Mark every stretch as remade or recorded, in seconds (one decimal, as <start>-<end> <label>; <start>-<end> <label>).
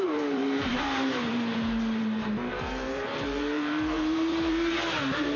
0.0-5.4 remade